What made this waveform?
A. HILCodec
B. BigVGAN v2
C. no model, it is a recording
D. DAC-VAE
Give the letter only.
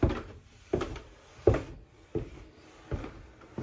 C